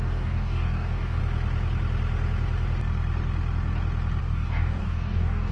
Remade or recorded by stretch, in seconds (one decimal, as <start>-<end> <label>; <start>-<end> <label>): 0.0-1.2 remade; 1.2-4.2 recorded; 4.2-5.5 remade